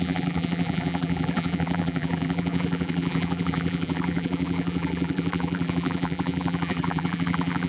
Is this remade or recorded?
remade